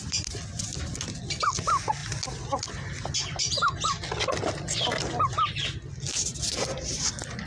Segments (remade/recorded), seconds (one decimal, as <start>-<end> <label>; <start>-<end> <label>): 0.0-7.5 recorded